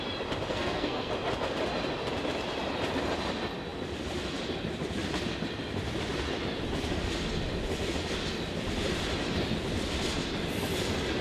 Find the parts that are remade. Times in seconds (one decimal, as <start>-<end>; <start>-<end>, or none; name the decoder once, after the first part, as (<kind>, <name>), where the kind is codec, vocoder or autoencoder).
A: 0.5-1.1 (codec, SNAC)